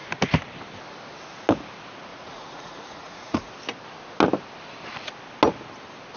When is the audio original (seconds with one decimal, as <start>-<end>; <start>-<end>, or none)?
0.0-2.1; 3.5-6.2